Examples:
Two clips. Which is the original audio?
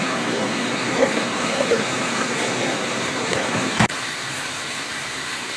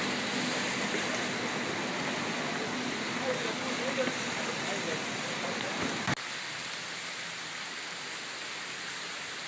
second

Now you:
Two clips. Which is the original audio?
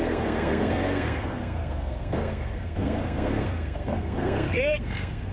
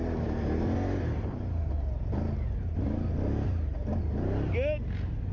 second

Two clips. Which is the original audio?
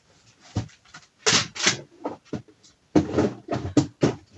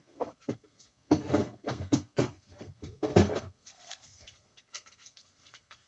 first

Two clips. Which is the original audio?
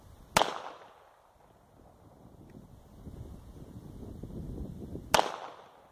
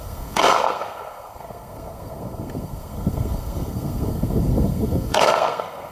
first